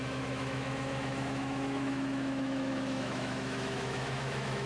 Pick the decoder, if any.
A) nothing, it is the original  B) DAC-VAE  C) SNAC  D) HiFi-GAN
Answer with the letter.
B